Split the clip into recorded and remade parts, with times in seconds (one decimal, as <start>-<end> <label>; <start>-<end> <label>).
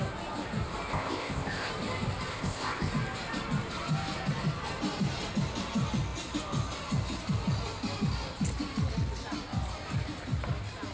0.0-0.9 recorded; 0.9-1.7 remade; 1.7-2.3 recorded; 2.3-2.9 remade; 2.9-10.9 recorded